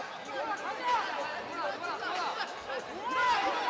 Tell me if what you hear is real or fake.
real